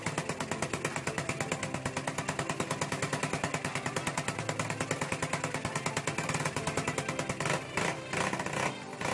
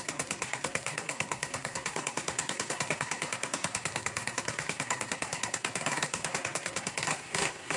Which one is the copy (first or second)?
second